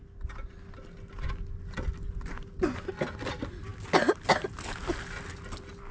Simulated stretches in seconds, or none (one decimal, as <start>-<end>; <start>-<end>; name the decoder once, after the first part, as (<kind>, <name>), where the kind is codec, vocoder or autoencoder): none